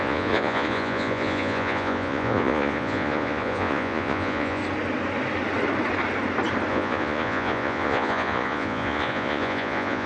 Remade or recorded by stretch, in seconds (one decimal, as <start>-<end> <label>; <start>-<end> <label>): 0.0-4.6 remade; 4.6-6.7 recorded; 6.7-10.1 remade